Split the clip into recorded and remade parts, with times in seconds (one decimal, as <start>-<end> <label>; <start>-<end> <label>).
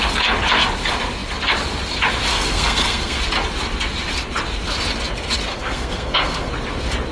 0.0-2.3 recorded; 2.3-3.2 remade; 3.2-5.5 recorded; 5.5-6.5 remade; 6.5-7.1 recorded